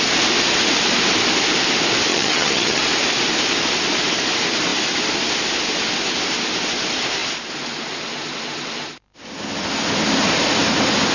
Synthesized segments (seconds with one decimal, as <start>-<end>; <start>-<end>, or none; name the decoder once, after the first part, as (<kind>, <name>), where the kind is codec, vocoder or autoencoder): 2.1-2.8 (vocoder, HiFi-GAN)